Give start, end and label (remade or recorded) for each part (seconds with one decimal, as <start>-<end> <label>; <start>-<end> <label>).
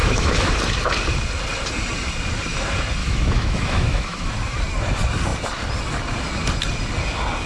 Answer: 0.0-0.5 remade; 0.5-3.0 recorded; 3.0-4.3 remade; 4.3-7.5 recorded